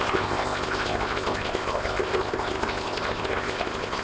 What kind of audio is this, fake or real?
fake